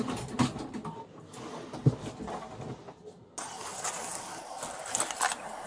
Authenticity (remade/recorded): recorded